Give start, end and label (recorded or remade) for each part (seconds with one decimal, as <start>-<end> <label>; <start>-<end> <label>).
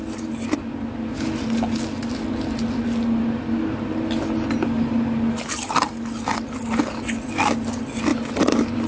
0.0-8.9 recorded